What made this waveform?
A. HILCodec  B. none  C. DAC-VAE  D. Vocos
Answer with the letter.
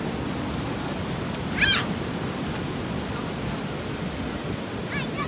B